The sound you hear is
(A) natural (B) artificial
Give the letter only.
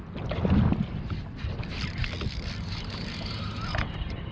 A